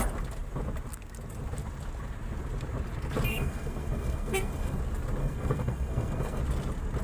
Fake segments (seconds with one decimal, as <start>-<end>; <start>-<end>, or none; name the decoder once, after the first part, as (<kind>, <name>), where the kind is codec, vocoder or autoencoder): 3.3-4.8 (codec, SNAC); 5.2-6.4